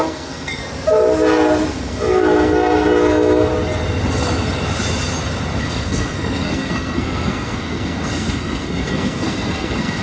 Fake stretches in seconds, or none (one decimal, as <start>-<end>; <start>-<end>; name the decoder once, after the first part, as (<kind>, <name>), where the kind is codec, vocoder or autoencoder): 0.0-0.6 (codec, SNAC); 1.7-3.5; 5.6-10.0